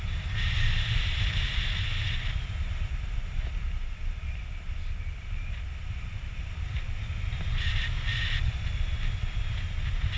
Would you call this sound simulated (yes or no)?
no